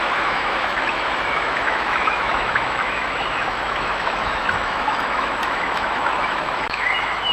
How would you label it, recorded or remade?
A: remade